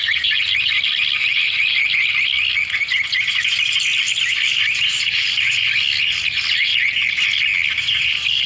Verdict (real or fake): real